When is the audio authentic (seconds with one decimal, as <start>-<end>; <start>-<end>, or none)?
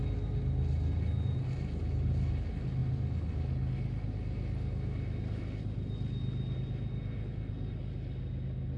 0.0-8.8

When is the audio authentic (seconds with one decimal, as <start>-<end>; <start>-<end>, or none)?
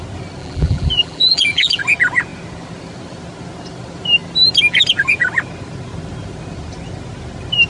0.0-0.4; 1.8-7.7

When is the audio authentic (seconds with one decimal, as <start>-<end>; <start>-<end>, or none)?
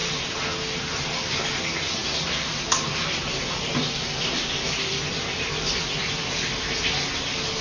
0.0-2.0; 6.6-7.6